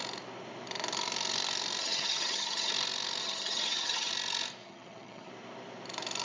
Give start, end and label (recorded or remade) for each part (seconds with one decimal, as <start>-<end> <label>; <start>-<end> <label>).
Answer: 0.0-1.8 recorded; 1.8-2.7 remade; 2.7-3.2 recorded; 3.2-4.1 remade; 4.1-4.6 recorded; 4.6-5.3 remade; 5.3-6.2 recorded